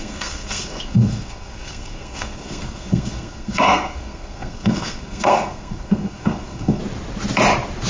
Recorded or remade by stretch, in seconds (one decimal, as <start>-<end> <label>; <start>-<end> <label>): 0.0-6.8 remade; 6.8-7.9 recorded